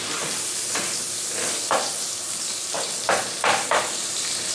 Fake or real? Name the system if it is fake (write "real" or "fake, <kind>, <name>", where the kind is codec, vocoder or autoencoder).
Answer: fake, vocoder, BigVGAN v2